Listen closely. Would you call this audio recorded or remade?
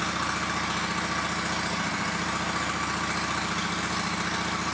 recorded